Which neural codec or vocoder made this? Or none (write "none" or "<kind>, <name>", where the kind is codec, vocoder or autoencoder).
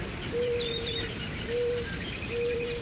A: vocoder, BigVGAN v2